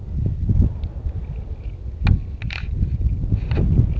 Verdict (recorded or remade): recorded